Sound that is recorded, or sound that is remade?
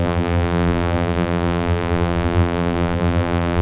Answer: remade